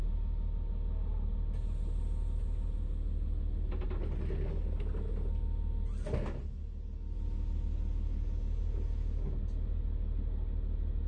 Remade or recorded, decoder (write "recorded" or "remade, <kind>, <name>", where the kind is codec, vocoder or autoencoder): recorded